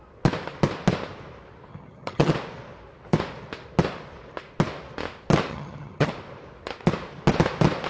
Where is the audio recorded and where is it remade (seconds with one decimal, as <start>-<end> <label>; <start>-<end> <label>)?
0.0-1.7 recorded; 1.7-2.3 remade; 2.3-5.5 recorded; 5.5-6.1 remade; 6.1-7.9 recorded